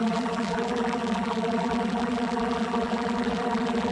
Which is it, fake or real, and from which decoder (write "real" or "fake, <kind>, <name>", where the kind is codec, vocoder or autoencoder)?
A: fake, vocoder, BigVGAN v2